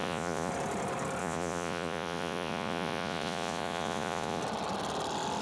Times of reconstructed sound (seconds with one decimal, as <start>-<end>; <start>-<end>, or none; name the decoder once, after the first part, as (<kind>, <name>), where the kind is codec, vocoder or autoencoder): 0.0-0.5 (vocoder, Vocos); 1.2-4.4